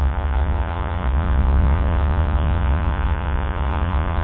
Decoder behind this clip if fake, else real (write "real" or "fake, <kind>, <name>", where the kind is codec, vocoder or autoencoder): fake, vocoder, Vocos